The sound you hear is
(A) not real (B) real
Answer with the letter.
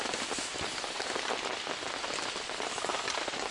A